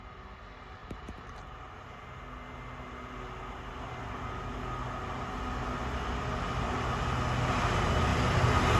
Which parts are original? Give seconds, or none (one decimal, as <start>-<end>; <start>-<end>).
0.0-0.8; 1.6-8.8